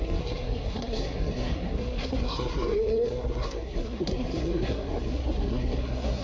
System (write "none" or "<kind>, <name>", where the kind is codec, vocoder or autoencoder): codec, SNAC